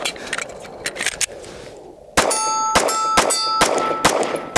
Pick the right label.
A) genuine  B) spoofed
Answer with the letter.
A